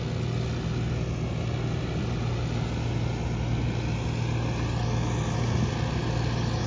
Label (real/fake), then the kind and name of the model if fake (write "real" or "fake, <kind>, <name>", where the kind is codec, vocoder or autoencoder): real